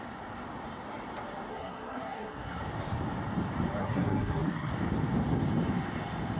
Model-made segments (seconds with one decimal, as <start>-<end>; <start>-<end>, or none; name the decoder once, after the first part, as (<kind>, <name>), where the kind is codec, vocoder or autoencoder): 1.5-2.6 (codec, SNAC); 3.8-4.7